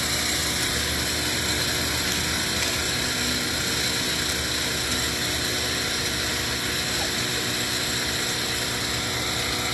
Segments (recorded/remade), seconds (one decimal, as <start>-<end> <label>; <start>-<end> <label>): 0.0-9.7 recorded